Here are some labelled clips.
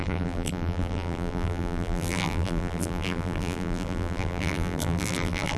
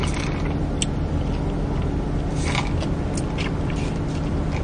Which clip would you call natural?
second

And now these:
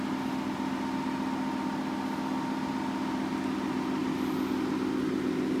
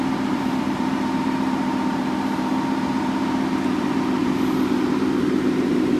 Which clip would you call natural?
first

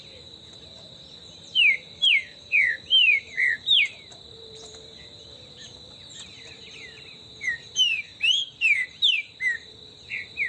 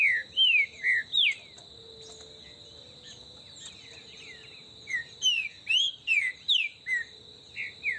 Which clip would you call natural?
second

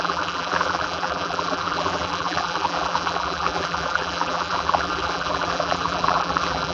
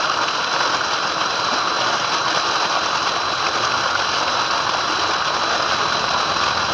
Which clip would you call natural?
second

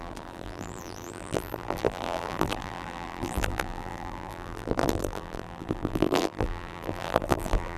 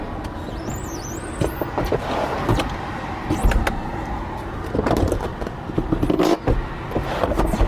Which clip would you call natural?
second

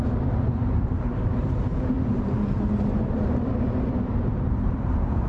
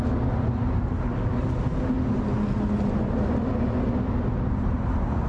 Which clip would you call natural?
second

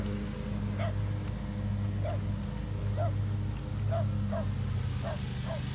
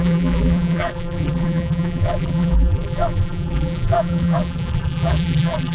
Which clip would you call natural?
first